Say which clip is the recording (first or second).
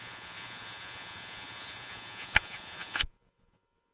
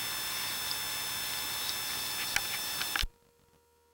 second